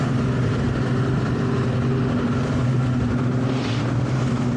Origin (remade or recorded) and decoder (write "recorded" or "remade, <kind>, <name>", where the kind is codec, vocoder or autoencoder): recorded